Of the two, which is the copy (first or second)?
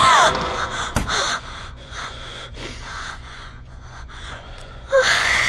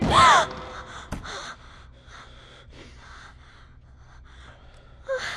first